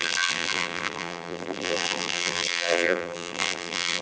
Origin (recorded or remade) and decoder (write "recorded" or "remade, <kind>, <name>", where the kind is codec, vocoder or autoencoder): remade, vocoder, BigVGAN v2